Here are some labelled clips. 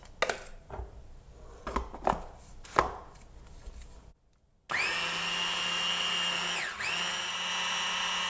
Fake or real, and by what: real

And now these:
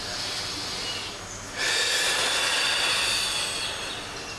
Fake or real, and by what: real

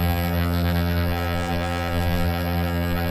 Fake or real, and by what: fake, vocoder, BigVGAN v2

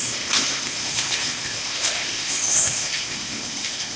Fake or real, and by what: fake, codec, ZipCodec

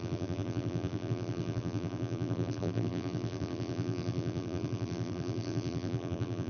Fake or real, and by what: fake, vocoder, BigVGAN v2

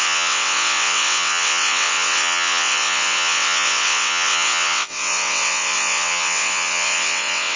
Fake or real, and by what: fake, vocoder, WaveNeXt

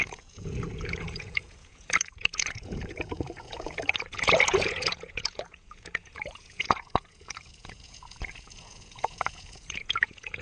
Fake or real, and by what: fake, vocoder, Vocos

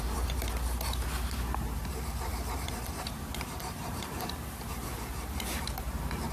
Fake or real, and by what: fake, vocoder, BigVGAN v2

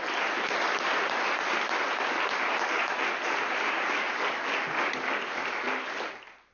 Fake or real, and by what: real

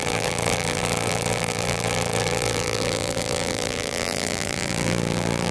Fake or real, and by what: fake, vocoder, BigVGAN v2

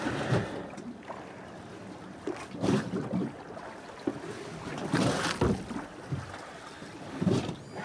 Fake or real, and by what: real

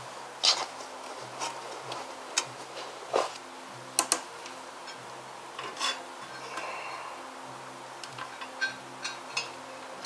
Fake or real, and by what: real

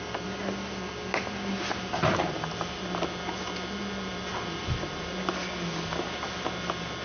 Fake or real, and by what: real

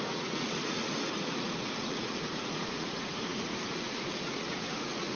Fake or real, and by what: fake, vocoder, Vocos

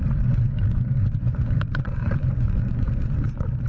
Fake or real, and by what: fake, vocoder, Vocos